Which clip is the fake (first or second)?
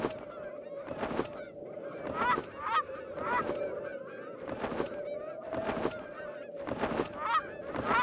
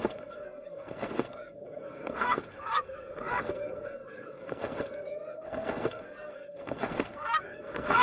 second